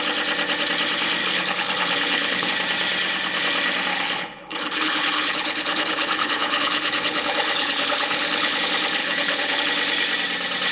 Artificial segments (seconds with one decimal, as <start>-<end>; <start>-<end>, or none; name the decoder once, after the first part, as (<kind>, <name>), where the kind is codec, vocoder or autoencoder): 1.2-2.5 (codec, HILCodec); 3.9-8.6; 9.0-9.6